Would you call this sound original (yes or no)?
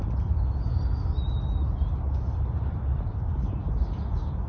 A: yes